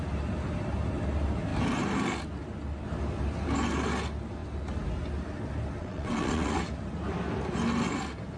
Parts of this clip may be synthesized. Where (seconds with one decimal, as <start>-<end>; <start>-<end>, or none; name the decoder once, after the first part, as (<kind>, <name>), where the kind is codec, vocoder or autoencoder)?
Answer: 5.8-6.7 (vocoder, WaveNeXt)